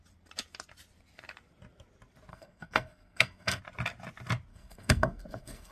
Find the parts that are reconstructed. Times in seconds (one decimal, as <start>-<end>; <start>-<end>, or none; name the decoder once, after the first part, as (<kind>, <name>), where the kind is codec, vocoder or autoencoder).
2.3-3.6 (codec, SNAC); 4.5-5.7